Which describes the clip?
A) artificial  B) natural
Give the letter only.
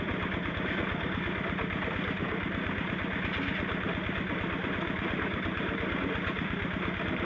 A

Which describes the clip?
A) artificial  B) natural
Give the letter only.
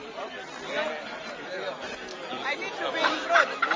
B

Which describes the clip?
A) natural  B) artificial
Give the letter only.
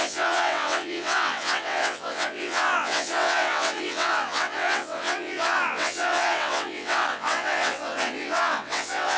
B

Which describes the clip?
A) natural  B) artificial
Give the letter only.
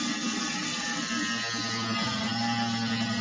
A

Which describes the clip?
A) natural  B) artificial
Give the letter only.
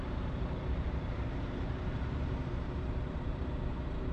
B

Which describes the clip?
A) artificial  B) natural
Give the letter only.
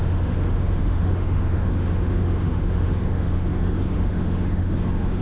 A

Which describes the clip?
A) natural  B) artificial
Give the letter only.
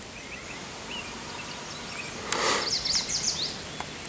A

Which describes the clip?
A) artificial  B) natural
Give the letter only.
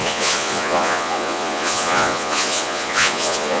A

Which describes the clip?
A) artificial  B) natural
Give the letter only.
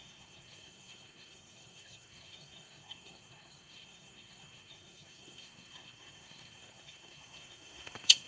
A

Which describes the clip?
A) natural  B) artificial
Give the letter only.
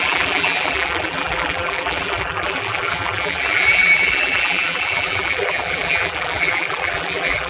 B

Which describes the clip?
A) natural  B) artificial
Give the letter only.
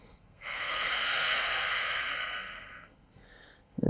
B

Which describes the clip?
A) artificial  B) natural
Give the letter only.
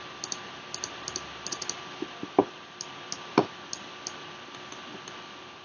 B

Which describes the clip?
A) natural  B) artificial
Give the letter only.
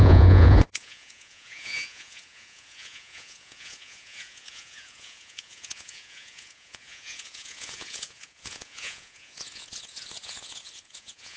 B